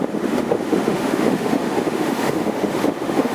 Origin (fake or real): fake